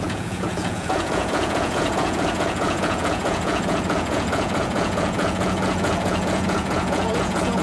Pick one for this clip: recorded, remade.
remade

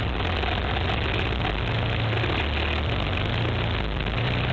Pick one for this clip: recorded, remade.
recorded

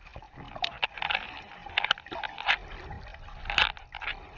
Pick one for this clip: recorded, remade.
recorded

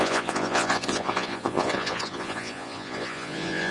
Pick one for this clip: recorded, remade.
remade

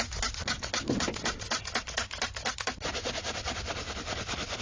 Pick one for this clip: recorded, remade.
recorded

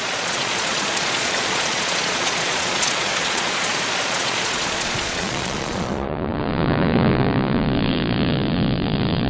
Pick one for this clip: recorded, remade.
remade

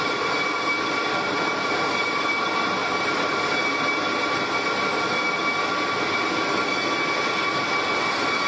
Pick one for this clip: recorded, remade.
recorded